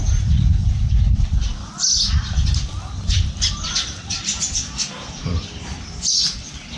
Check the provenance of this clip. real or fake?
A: real